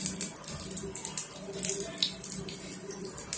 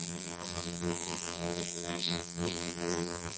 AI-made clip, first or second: second